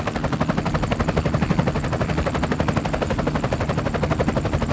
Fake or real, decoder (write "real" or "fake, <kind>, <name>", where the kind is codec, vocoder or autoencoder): real